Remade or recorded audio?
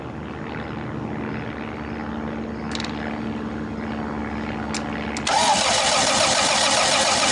recorded